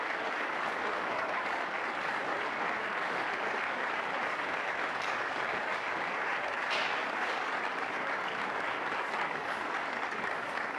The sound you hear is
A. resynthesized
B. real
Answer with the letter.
A